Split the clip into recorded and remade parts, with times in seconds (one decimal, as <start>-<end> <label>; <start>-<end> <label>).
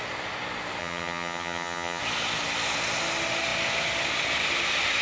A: 0.0-0.8 recorded; 0.8-2.0 remade; 2.0-5.0 recorded